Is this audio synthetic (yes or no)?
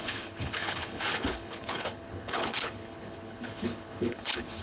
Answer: yes